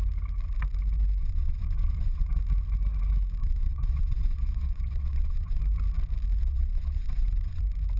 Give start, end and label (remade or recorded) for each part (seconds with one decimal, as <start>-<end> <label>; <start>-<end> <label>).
0.0-1.2 recorded; 1.2-2.4 remade; 2.4-3.4 recorded; 3.4-5.6 remade; 5.6-6.4 recorded; 6.4-7.6 remade; 7.6-8.0 recorded